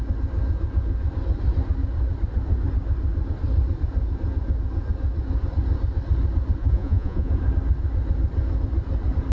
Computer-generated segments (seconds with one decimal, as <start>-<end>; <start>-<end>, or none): 6.6-7.3